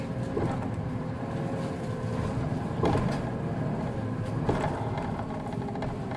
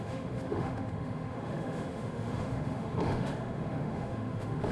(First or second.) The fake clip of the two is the second